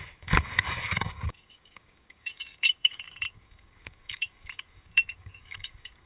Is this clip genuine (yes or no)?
no